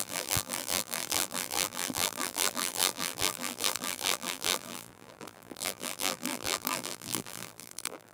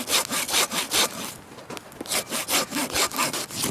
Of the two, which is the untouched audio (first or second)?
second